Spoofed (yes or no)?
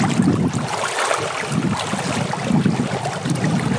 no